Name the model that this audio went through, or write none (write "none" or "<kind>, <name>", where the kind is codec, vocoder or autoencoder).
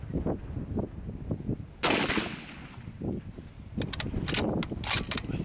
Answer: none